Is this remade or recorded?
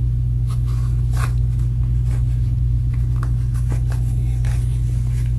recorded